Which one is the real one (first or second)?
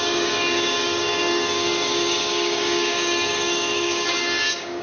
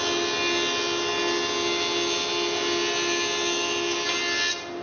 second